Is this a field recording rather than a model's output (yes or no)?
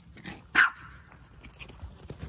yes